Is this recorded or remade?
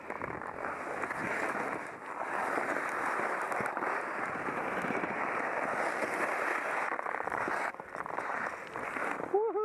recorded